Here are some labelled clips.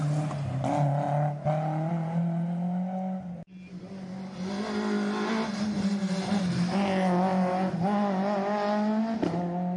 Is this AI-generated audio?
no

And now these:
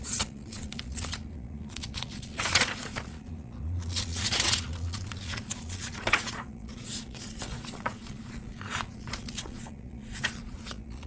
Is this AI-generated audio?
yes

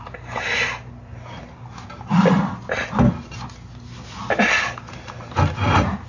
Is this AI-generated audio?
no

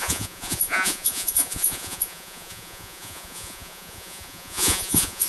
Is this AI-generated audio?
yes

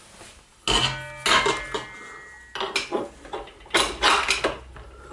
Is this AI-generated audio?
no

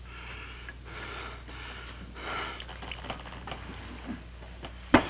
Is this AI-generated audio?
no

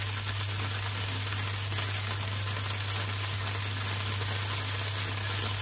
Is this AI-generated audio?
no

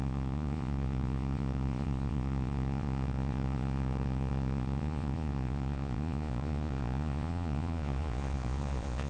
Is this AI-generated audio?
yes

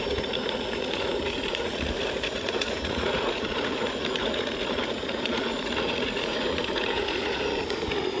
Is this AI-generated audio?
yes